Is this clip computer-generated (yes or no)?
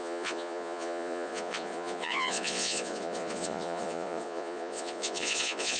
yes